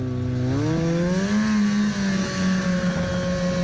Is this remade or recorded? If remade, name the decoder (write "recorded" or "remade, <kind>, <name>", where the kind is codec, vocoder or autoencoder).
recorded